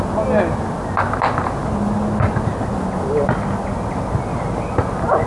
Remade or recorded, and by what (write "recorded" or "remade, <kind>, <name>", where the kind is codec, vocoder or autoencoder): recorded